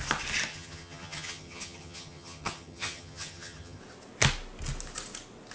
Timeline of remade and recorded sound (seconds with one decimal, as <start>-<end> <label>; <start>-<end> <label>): 0.0-0.5 recorded; 0.5-3.8 remade; 3.8-5.5 recorded